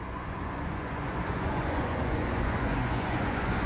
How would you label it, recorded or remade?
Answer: remade